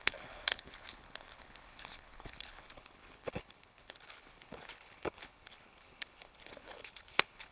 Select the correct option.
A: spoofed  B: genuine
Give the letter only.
A